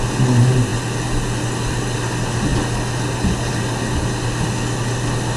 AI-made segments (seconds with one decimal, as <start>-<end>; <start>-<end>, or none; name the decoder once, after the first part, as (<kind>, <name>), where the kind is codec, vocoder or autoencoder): none